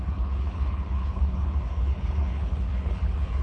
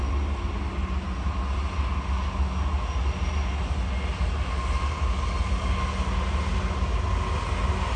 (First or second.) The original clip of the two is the second